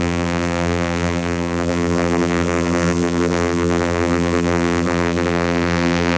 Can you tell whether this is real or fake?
fake